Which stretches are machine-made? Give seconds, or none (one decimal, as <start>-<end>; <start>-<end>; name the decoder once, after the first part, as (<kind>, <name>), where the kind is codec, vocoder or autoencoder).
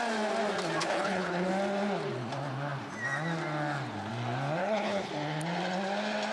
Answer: 0.8-1.5 (codec, HILCodec); 4.6-5.1